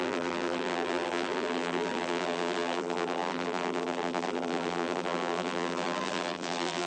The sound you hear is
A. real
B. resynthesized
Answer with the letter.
B